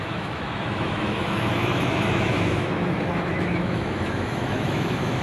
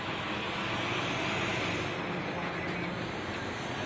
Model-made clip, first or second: first